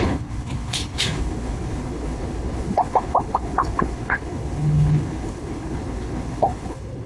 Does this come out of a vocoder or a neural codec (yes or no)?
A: yes